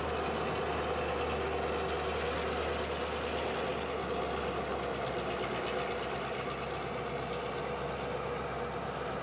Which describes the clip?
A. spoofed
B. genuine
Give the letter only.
B